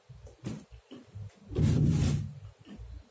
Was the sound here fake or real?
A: real